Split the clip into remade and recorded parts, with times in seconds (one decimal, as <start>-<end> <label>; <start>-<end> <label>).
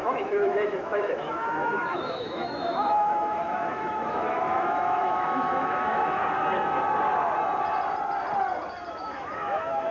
0.0-6.2 remade; 6.2-8.9 recorded; 8.9-9.9 remade